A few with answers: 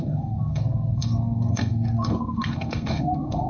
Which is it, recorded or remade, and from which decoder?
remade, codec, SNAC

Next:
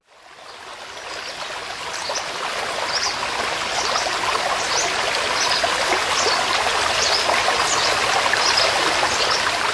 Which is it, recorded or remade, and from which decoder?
recorded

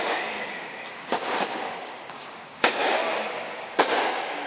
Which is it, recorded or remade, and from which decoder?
remade, codec, DAC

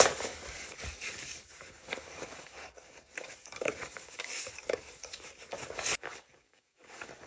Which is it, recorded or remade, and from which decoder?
remade, codec, DAC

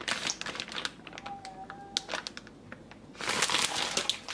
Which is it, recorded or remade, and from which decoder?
recorded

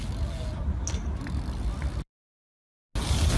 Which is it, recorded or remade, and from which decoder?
recorded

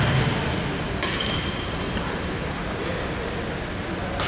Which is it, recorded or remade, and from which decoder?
recorded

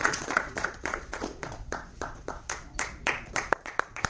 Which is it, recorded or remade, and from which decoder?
remade, vocoder, Vocos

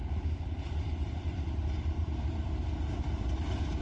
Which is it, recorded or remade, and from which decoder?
remade, vocoder, BigVGAN v2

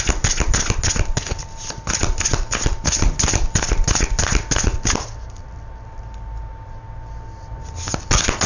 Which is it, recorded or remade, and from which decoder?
recorded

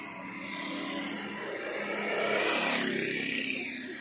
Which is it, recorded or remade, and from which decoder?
recorded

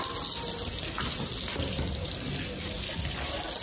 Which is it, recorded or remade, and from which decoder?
recorded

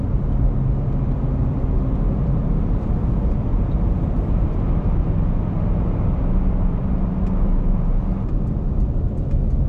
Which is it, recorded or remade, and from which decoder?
recorded